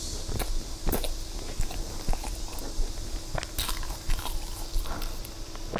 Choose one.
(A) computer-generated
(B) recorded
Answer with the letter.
B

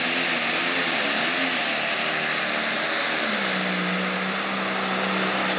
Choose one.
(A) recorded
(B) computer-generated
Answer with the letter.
A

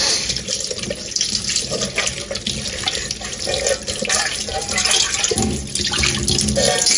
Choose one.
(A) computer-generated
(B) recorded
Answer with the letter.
B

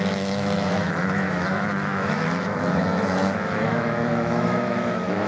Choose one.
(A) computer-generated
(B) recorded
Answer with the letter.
A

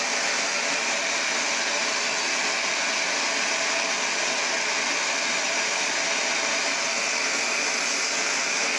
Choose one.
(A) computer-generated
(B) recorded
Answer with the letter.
B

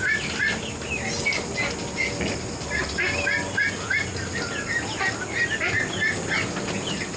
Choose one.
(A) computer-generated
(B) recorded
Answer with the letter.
B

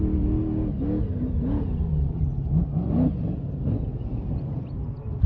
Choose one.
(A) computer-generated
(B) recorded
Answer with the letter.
B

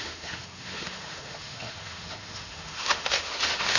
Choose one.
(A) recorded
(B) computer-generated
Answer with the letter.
B